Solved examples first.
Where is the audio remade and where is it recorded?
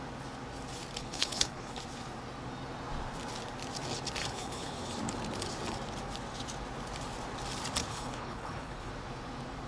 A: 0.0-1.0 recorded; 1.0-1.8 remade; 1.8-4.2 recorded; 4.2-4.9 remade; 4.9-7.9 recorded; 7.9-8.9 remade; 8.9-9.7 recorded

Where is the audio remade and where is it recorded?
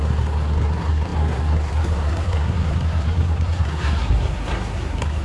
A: 0.0-5.2 remade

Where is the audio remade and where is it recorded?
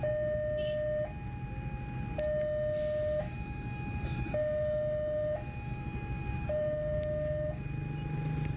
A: 0.0-3.2 recorded; 3.2-7.6 remade; 7.6-8.6 recorded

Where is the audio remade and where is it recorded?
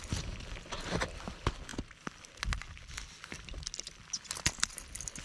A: 0.0-5.2 recorded